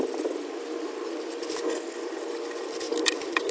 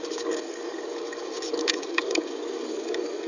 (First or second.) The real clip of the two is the first